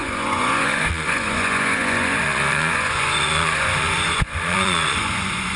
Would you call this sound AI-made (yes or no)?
yes